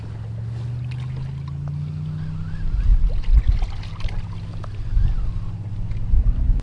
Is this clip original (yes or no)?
yes